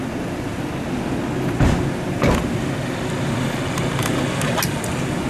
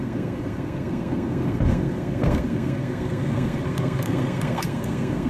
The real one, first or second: first